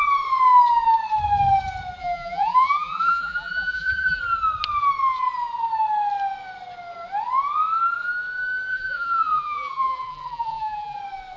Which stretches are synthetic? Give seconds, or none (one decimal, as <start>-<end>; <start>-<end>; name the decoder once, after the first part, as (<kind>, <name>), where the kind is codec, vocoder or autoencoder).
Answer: 2.0-4.2 (vocoder, BigVGAN v2); 8.7-11.0